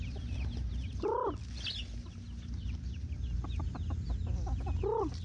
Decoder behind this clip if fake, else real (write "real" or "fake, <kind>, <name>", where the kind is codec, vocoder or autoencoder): real